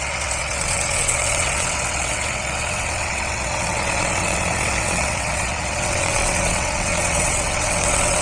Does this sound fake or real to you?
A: fake